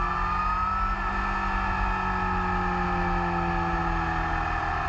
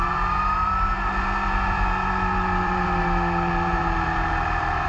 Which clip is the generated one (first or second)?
second